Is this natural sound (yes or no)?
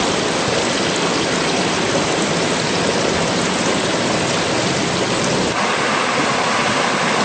yes